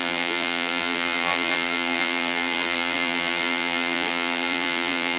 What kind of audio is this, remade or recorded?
remade